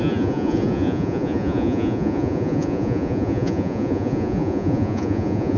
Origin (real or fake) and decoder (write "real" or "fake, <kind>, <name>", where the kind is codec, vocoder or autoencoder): fake, vocoder, Vocos